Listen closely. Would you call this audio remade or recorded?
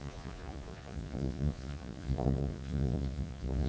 remade